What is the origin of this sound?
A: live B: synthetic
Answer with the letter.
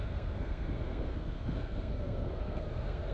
B